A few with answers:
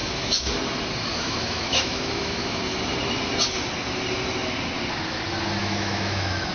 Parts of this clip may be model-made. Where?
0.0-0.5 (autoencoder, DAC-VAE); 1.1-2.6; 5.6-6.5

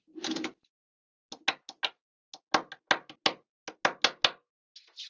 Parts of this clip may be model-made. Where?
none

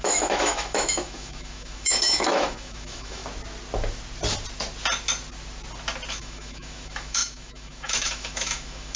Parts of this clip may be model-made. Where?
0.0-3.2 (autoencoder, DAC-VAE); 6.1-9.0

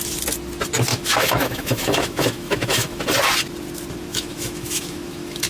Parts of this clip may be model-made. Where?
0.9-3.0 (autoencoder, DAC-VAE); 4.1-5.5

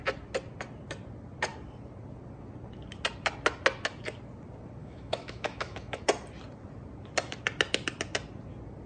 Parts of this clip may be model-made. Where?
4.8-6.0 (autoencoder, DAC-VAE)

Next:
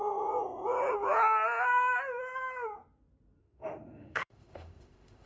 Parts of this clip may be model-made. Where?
3.4-5.3 (autoencoder, DAC-VAE)

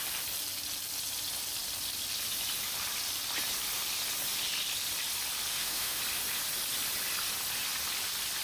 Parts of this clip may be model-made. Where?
5.5-6.0 (autoencoder, DAC-VAE)

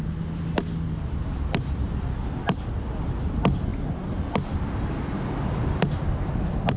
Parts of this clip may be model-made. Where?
none